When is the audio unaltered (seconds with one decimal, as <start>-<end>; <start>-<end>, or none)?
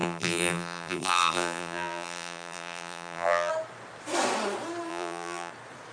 3.5-4.9; 5.5-5.9